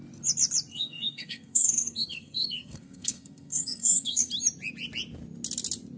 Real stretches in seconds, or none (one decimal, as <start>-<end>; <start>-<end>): 0.0-0.7; 4.3-6.0